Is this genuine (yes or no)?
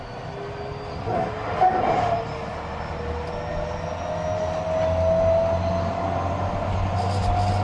yes